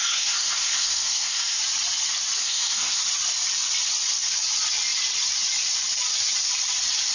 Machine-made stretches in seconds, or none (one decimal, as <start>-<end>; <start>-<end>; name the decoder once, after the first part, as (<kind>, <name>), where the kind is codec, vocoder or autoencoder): 0.0-1.6 (codec, SNAC); 2.4-3.0